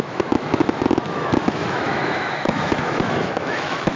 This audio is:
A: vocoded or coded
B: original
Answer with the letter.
A